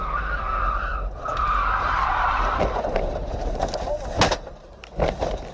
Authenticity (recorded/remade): recorded